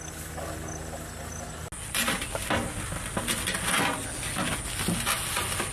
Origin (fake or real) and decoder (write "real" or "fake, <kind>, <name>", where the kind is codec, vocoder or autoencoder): real